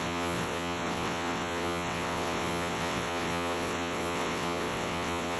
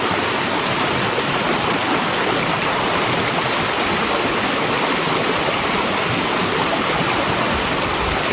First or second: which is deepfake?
first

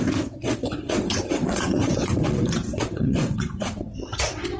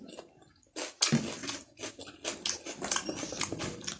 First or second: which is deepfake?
first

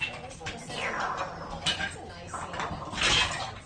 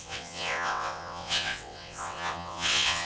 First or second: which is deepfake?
second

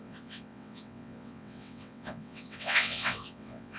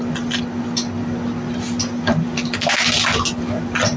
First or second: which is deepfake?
first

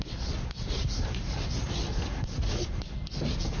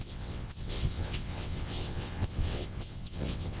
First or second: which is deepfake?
second